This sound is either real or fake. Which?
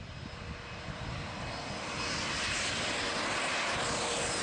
real